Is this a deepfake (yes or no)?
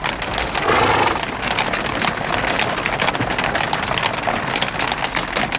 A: no